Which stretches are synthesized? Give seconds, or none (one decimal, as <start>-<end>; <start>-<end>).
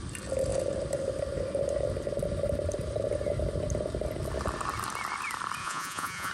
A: 5.6-6.3